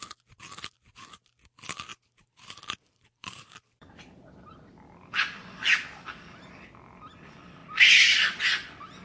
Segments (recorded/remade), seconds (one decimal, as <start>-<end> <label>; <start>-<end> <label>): 0.0-1.9 recorded; 1.9-3.9 remade; 3.9-9.0 recorded